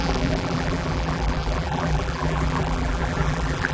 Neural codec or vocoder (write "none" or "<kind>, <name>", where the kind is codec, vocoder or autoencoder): vocoder, BigVGAN v2